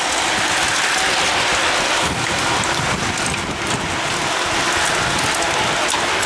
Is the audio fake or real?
real